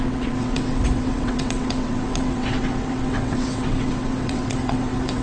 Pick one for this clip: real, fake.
fake